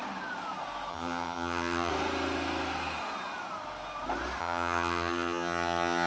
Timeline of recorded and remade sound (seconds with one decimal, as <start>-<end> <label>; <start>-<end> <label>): 0.0-0.9 recorded; 0.9-1.9 remade; 1.9-4.4 recorded; 4.4-6.1 remade

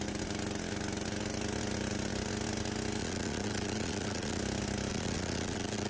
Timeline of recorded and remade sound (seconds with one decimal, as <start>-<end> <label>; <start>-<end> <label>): 0.0-3.0 recorded; 3.0-4.4 remade; 4.4-4.9 recorded; 4.9-5.9 remade

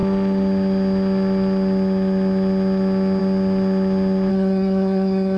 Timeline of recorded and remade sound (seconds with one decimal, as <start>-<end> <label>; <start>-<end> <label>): 0.0-4.3 recorded; 4.3-5.4 remade

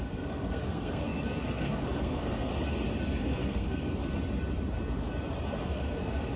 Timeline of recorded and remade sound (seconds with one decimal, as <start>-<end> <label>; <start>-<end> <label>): 0.0-2.5 remade; 2.5-3.2 recorded; 3.2-3.9 remade; 3.9-5.6 recorded; 5.6-6.4 remade

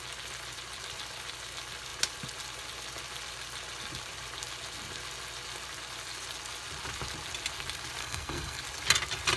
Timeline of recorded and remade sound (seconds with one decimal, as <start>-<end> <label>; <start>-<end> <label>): 0.0-8.0 recorded; 8.0-8.6 remade; 8.6-9.4 recorded

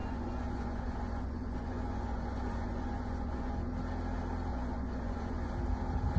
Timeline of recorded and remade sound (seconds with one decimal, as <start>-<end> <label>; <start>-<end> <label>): 0.0-3.7 remade; 3.7-4.5 recorded; 4.5-5.5 remade; 5.5-6.2 recorded

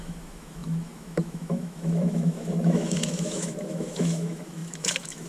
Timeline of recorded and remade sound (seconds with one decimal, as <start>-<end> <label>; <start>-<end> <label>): 0.0-5.3 remade

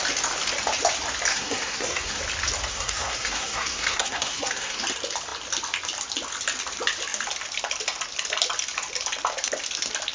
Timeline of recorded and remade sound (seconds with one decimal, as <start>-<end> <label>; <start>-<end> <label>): 0.0-1.3 recorded; 1.3-2.2 remade; 2.2-2.7 recorded; 2.7-4.8 remade; 4.8-10.1 recorded